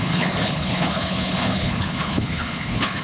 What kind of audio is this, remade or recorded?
remade